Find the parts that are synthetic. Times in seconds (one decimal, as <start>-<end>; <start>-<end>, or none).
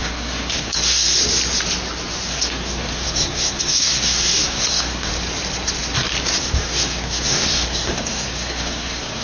0.0-1.2; 2.3-5.1; 6.4-9.2